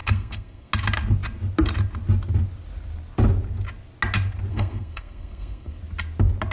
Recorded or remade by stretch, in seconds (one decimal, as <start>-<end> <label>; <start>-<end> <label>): 0.0-0.7 remade; 0.7-4.5 recorded; 4.5-5.8 remade; 5.8-6.5 recorded